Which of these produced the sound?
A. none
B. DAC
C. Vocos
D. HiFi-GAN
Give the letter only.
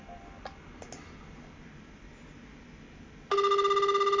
A